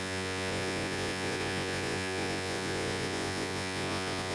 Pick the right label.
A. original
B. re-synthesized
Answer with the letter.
B